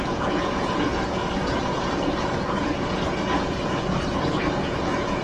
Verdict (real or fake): fake